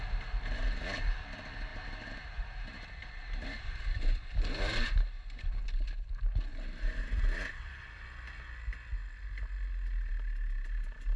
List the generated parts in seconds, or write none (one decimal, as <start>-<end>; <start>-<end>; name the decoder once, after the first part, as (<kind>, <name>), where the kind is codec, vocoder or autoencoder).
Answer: 1.7-5.6 (vocoder, BigVGAN v2); 6.5-8.0